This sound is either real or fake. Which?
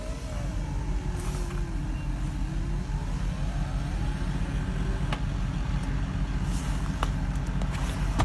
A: real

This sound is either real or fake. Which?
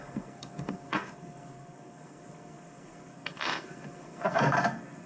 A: fake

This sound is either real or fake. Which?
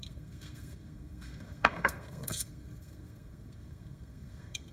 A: fake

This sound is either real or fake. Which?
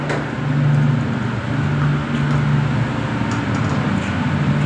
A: real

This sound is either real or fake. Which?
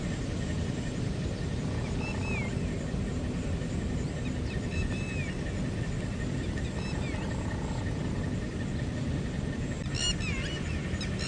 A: real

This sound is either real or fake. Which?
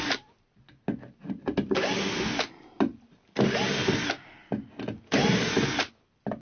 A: real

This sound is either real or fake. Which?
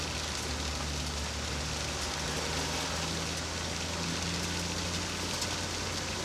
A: real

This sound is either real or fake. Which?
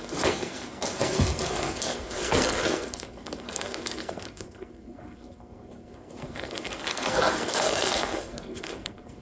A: fake